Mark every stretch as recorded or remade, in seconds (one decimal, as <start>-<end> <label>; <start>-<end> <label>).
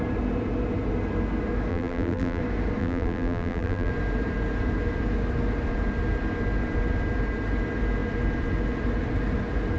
0.0-1.7 recorded; 1.7-2.4 remade; 2.4-2.8 recorded; 2.8-3.9 remade; 3.9-9.8 recorded